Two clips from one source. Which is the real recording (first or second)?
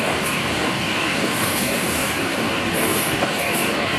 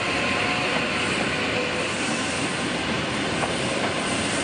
second